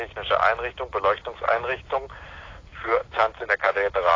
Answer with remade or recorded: recorded